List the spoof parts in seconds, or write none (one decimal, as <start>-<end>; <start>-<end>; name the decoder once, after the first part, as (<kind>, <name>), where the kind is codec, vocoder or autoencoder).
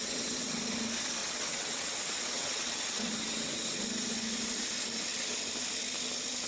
0.0-0.6 (vocoder, WaveNeXt); 1.2-3.8